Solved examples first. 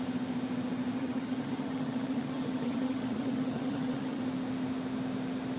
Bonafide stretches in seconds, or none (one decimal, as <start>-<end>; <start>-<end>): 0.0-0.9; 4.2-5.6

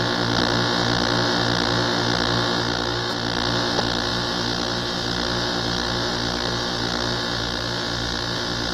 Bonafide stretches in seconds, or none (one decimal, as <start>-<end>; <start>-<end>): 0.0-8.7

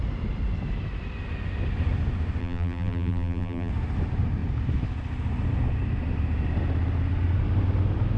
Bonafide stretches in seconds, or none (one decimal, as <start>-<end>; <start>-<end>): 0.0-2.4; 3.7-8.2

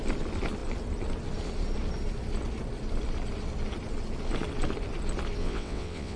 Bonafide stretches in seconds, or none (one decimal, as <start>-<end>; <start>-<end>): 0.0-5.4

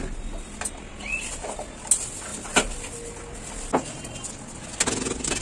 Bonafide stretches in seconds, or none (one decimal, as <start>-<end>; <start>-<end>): 0.0-5.4